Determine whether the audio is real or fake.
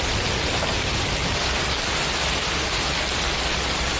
real